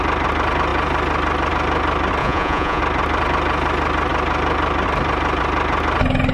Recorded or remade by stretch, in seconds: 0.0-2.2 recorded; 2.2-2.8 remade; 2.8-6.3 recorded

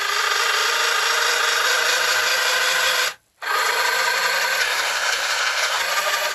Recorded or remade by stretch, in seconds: 0.0-4.6 recorded; 4.6-5.8 remade; 5.8-6.3 recorded

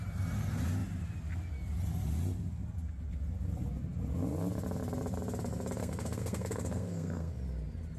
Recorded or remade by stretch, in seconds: 0.0-5.8 recorded; 5.8-7.3 remade; 7.3-8.0 recorded

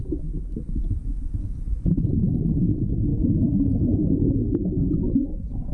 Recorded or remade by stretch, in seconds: 0.0-5.7 recorded